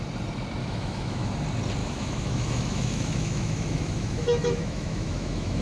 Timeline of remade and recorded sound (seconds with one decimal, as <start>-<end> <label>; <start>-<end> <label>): 0.0-0.6 recorded; 0.6-1.3 remade; 1.3-1.8 recorded; 1.8-5.6 remade

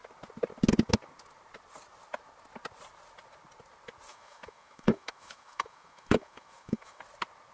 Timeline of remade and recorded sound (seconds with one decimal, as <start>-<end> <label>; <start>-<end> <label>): 0.0-4.1 recorded; 4.1-7.0 remade; 7.0-7.5 recorded

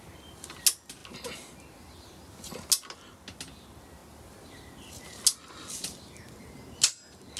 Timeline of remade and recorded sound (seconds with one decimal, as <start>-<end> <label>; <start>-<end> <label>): 0.0-7.4 recorded

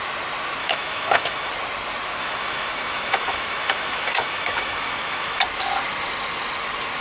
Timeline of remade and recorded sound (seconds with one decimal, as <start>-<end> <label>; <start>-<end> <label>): 0.0-0.6 recorded; 0.6-1.5 remade; 1.5-2.2 recorded; 2.2-5.4 remade; 5.4-7.0 recorded

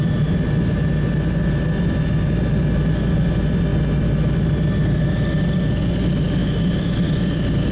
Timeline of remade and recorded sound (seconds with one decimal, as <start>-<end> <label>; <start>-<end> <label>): 0.0-6.4 recorded; 6.4-7.0 remade; 7.0-7.7 recorded

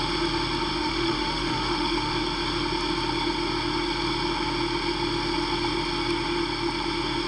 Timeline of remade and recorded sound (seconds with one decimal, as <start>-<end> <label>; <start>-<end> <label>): 0.0-0.7 recorded; 0.7-2.1 remade; 2.1-7.3 recorded

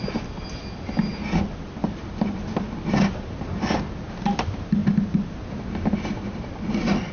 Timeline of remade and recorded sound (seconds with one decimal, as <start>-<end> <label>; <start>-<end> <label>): 0.0-7.1 recorded